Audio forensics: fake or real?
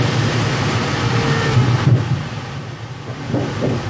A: real